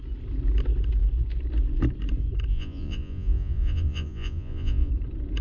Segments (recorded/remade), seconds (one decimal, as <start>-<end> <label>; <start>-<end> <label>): 0.0-2.5 recorded; 2.5-4.9 remade; 4.9-5.4 recorded